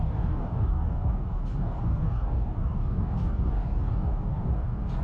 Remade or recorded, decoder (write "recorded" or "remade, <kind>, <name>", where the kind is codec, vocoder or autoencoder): remade, codec, DAC